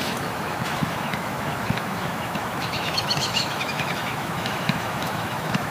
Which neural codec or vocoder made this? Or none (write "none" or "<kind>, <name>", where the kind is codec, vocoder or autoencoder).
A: autoencoder, DAC-VAE